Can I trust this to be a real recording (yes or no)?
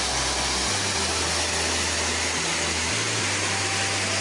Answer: yes